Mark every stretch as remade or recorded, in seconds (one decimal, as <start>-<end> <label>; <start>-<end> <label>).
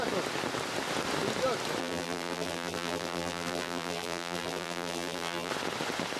0.0-1.8 recorded; 1.8-5.5 remade; 5.5-6.2 recorded